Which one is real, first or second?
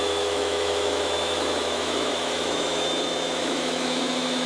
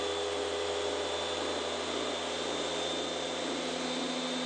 second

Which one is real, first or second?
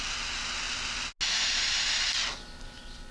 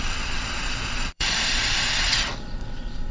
first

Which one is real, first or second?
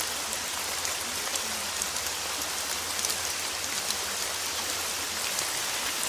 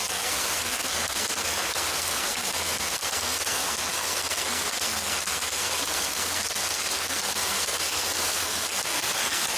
first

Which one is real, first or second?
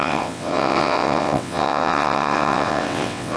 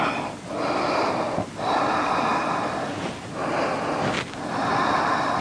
second